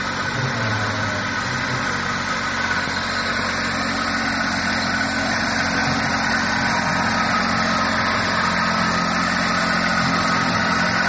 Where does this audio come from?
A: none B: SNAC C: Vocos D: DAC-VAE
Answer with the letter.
A